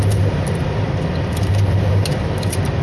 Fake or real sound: real